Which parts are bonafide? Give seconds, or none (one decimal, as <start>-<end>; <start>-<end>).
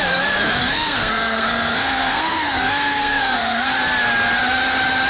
0.0-0.6; 3.7-5.1